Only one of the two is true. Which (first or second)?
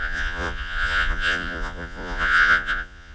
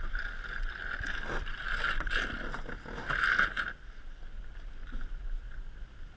second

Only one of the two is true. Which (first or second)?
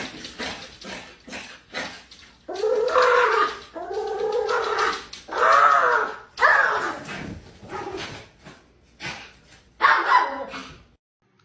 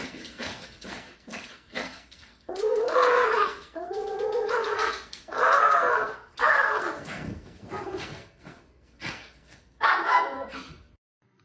first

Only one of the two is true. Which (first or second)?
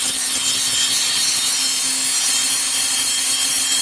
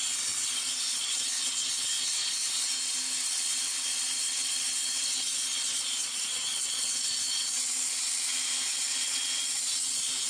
first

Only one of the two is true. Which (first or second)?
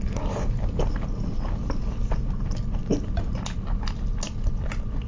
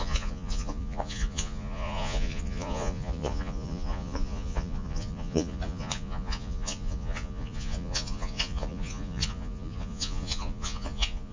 first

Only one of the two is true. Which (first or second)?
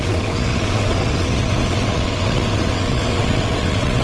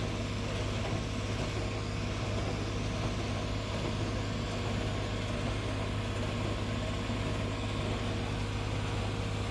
second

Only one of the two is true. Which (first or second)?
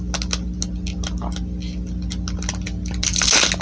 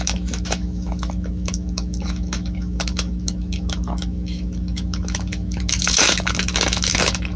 first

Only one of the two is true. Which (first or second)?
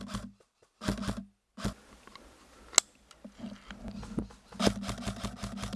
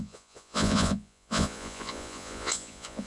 first